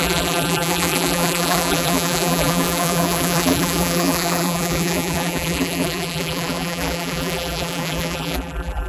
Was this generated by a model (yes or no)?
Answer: yes